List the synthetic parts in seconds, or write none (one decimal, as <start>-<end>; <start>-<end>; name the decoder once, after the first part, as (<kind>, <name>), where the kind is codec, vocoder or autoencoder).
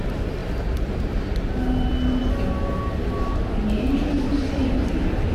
none